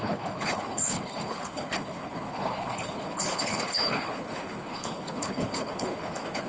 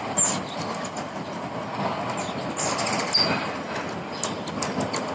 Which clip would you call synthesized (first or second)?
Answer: first